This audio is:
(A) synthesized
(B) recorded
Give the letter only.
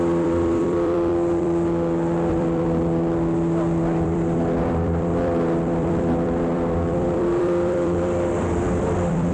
A